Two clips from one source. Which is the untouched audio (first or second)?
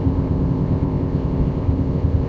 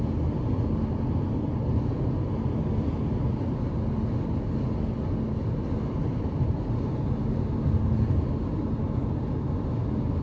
second